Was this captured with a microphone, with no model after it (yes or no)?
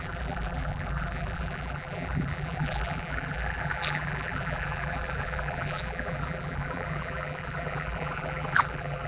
no